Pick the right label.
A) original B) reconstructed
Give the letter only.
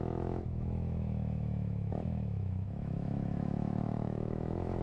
B